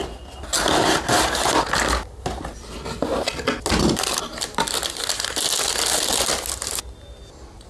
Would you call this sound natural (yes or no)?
yes